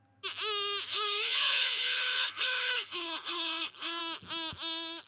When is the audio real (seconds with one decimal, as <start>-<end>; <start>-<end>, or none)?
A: 0.0-0.9; 4.0-5.1